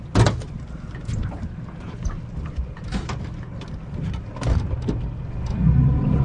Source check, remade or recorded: recorded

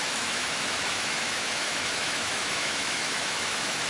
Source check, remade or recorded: remade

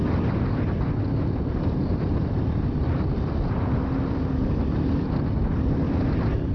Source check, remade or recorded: recorded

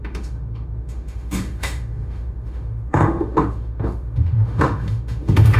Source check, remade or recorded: remade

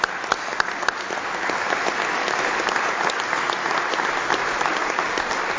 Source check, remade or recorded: recorded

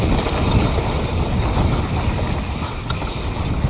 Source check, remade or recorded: recorded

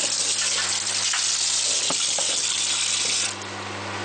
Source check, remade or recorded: recorded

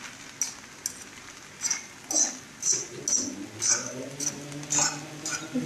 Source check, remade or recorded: recorded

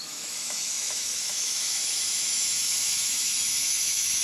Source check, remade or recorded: remade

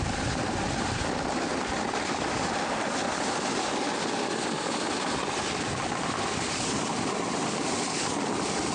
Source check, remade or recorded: recorded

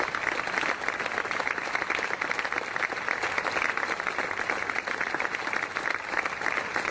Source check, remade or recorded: recorded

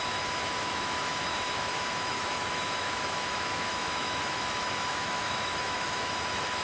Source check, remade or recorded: remade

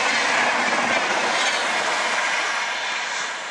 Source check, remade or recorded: recorded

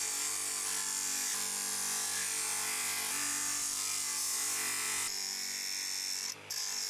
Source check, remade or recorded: recorded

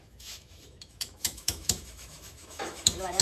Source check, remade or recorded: remade